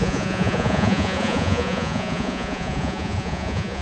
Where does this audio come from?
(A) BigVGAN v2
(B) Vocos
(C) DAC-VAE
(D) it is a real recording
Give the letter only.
B